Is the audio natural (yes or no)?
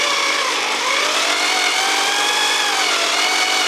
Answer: yes